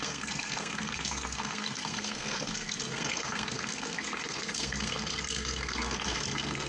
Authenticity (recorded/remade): remade